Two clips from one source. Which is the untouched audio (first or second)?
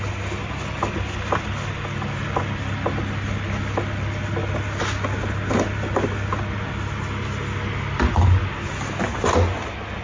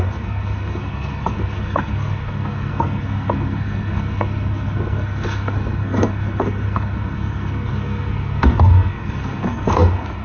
first